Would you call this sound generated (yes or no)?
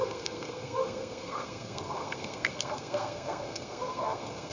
yes